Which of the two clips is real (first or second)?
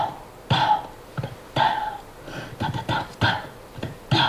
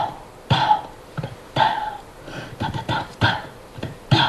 first